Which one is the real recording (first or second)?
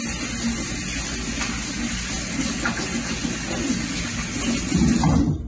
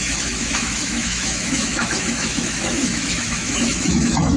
first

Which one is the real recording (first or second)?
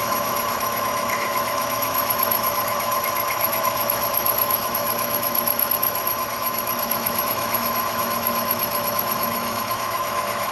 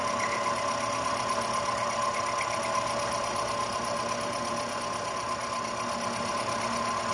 second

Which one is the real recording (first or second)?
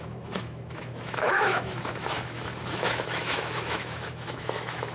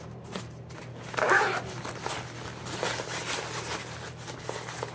second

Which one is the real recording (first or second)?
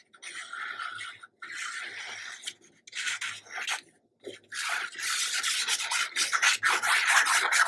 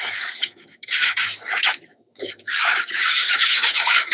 first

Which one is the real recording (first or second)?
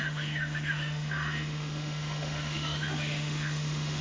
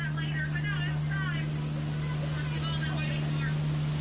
second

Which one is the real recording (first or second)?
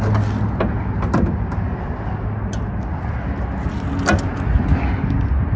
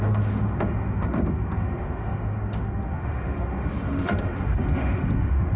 first